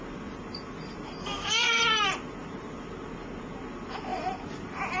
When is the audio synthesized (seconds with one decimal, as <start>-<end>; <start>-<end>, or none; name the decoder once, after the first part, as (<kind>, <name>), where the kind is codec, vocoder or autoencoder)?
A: 1.2-1.8 (codec, SNAC)